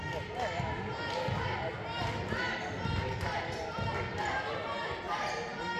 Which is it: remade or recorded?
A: recorded